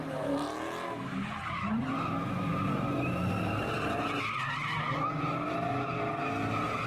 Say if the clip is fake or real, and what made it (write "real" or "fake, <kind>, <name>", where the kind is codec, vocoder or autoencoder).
real